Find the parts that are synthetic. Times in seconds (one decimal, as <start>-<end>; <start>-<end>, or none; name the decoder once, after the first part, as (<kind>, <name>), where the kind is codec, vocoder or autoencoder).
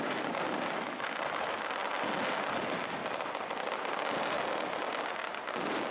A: none